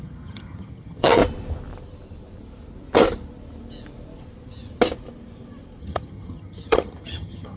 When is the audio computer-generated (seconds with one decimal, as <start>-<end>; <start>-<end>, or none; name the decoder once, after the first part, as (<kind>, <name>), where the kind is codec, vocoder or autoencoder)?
0.0-1.2 (vocoder, HiFi-GAN); 5.8-7.6